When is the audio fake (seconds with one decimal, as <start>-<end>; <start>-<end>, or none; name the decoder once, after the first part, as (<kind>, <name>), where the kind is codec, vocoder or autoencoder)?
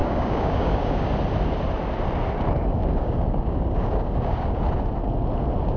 0.0-1.1 (codec, DAC); 2.8-4.6